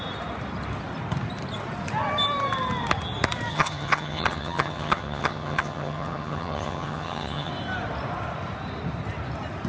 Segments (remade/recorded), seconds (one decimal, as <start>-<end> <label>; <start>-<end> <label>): 0.0-3.5 recorded; 3.5-7.5 remade; 7.5-9.7 recorded